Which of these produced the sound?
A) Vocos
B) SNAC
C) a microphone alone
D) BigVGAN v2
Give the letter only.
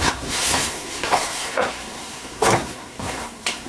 B